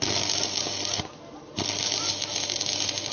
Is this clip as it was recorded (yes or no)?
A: yes